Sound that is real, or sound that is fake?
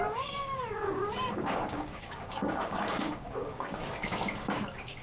fake